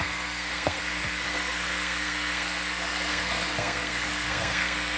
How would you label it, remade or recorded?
remade